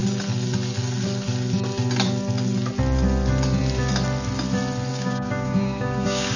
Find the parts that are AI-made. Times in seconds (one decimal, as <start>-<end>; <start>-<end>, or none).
4.9-6.4